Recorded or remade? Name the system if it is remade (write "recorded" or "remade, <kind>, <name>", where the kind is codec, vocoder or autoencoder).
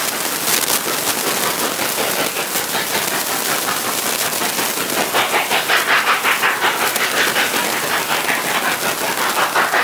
recorded